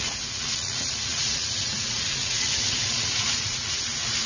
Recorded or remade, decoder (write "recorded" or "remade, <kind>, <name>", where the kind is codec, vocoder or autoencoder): remade, vocoder, Vocos